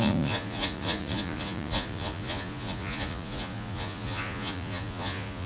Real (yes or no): no